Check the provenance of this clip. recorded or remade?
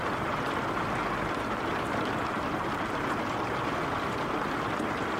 recorded